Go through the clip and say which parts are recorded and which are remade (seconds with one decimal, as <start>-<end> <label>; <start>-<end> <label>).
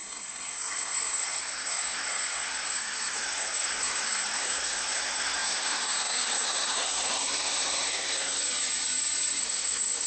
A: 0.0-8.4 remade; 8.4-9.4 recorded; 9.4-10.1 remade